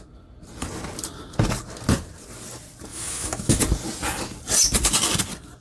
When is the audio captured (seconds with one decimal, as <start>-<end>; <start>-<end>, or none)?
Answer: 0.0-2.9; 3.6-5.6